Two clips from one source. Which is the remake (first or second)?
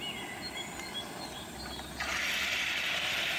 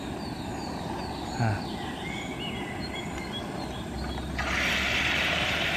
second